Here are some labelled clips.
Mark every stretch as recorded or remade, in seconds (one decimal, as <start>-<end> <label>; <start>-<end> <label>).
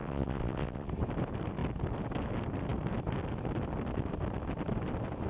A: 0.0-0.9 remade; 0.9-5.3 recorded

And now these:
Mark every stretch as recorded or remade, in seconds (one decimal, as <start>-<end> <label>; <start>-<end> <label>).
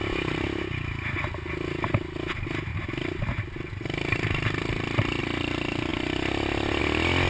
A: 0.0-7.3 recorded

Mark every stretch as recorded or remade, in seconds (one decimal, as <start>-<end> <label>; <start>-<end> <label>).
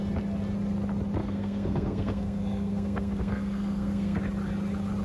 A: 0.0-1.2 recorded; 1.2-4.2 remade; 4.2-5.0 recorded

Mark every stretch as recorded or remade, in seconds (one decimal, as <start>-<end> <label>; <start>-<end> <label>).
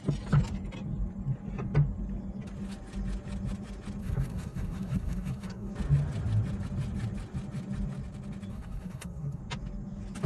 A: 0.0-4.0 recorded; 4.0-5.7 remade; 5.7-8.5 recorded; 8.5-9.4 remade; 9.4-10.3 recorded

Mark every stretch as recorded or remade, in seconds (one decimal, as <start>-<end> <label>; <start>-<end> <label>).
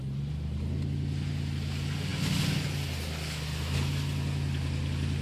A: 0.0-5.2 recorded